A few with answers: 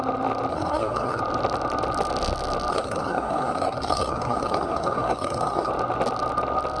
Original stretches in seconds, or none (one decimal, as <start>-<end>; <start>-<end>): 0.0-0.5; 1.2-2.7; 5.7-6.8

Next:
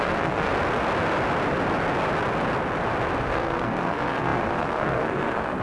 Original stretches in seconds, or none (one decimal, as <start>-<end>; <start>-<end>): 0.5-3.2

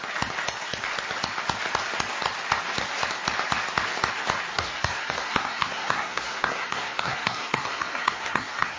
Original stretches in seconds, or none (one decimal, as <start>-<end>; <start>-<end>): 0.0-4.5

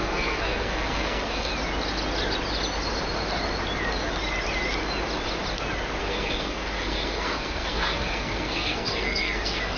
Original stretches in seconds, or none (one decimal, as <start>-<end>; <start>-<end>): 1.5-6.0

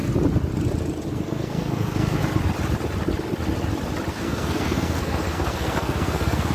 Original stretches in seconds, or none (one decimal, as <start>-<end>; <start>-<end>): 0.0-1.1; 2.2-4.1